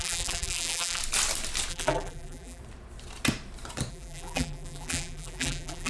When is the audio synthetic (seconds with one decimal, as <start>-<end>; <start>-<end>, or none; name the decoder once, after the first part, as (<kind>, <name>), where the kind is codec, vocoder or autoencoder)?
0.0-1.0 (vocoder, BigVGAN v2); 1.7-2.6; 3.9-5.9